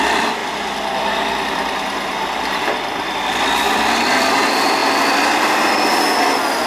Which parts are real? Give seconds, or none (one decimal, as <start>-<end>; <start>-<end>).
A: 0.0-6.7